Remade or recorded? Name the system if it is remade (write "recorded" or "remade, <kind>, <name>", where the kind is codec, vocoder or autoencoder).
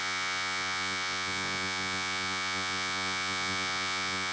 remade, vocoder, Vocos